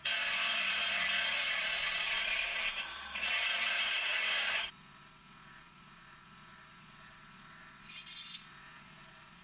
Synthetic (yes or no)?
yes